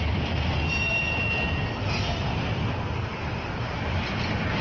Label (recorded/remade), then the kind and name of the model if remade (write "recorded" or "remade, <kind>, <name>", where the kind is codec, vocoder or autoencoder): recorded